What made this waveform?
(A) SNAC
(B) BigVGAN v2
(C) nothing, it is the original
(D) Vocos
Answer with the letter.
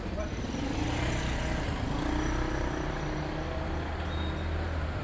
C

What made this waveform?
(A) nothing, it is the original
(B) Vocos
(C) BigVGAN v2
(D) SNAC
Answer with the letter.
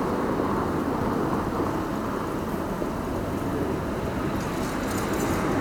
A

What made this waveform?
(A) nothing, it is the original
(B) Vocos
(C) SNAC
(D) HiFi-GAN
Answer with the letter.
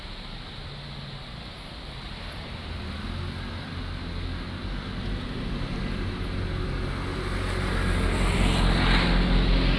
A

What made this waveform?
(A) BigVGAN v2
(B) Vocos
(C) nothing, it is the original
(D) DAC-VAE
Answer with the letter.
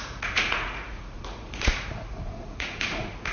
B